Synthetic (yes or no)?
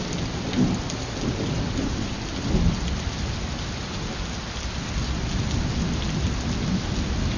no